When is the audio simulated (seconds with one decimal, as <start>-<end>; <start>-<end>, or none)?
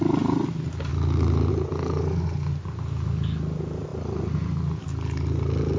none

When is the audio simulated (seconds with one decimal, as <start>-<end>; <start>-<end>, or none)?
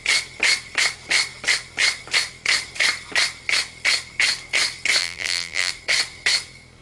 5.0-5.7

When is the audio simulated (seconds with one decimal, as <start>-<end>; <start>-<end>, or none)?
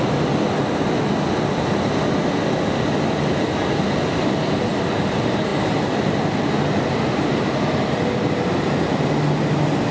none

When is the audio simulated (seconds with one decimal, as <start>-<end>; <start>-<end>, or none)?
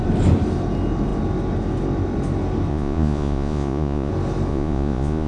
2.7-4.1; 4.5-5.3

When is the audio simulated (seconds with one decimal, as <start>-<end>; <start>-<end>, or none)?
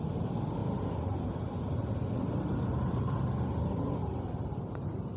none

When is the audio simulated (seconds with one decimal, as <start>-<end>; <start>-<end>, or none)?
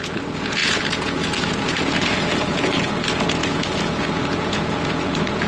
0.0-5.5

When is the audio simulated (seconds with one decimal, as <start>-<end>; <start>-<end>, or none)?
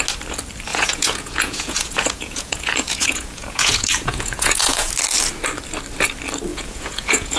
0.7-4.9; 6.5-7.4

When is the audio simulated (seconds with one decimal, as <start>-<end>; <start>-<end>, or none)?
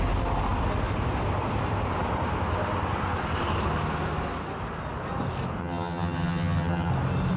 5.6-6.9